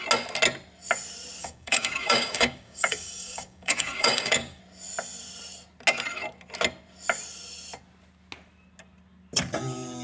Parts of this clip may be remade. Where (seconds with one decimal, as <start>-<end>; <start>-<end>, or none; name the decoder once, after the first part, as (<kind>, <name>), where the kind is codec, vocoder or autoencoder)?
1.4-4.6 (codec, DAC)

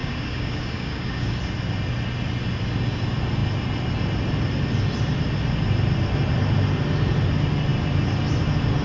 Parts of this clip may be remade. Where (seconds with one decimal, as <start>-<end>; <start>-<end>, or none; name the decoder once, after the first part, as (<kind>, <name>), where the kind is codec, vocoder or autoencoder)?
0.0-1.3 (codec, DAC)